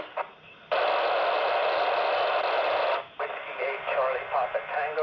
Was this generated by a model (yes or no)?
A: no